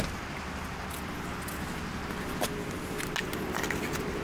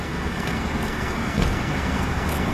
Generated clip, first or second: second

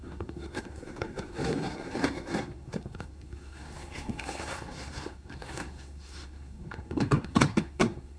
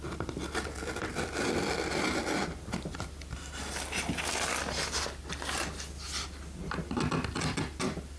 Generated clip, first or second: first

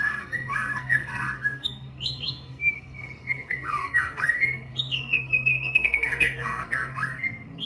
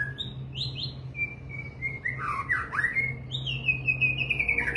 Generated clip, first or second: first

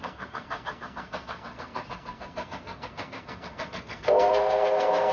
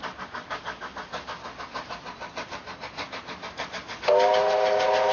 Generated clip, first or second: first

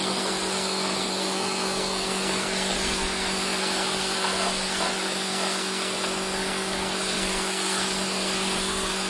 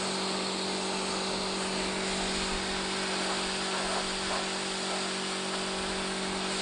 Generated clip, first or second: first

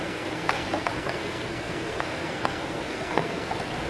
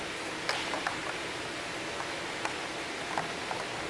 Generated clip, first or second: first